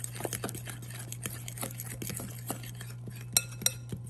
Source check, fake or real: real